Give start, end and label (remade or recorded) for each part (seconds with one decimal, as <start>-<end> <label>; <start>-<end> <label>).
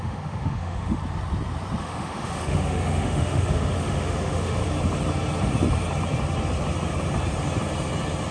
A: 0.0-1.0 remade; 1.0-1.8 recorded; 1.8-4.6 remade; 4.6-8.3 recorded